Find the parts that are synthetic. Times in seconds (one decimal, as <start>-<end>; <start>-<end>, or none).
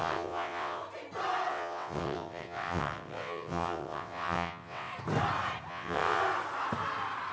0.0-0.8; 1.5-4.9; 5.7-6.2